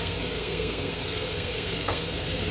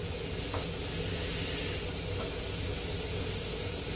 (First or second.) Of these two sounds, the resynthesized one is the first